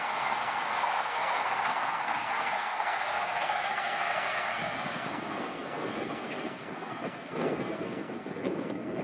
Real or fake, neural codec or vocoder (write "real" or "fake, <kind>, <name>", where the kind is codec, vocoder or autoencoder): fake, codec, SNAC